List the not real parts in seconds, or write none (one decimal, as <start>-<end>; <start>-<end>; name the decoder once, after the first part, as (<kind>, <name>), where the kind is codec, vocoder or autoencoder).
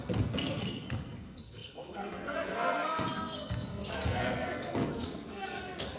0.0-6.0 (codec, SNAC)